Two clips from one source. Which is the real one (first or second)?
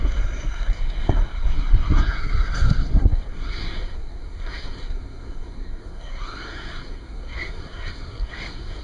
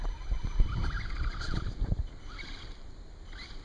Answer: second